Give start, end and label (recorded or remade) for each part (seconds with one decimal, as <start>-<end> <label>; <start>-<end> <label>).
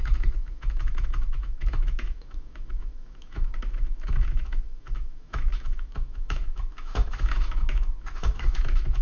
0.0-9.0 remade